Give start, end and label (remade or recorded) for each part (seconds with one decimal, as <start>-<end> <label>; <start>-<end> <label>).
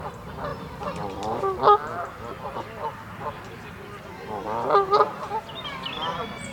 0.0-6.5 recorded